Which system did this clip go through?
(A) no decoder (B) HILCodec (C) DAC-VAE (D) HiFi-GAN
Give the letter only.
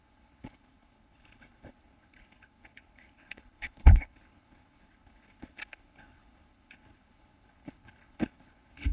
B